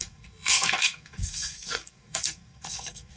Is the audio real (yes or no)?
no